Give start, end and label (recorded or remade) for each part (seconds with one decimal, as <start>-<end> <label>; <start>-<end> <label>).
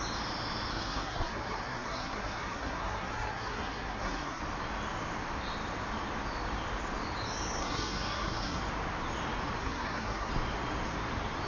0.0-0.7 recorded; 0.7-4.4 remade; 4.4-7.6 recorded; 7.6-8.6 remade; 8.6-9.6 recorded; 9.6-10.3 remade; 10.3-11.5 recorded